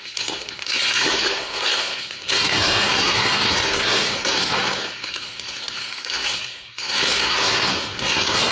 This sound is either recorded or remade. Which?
remade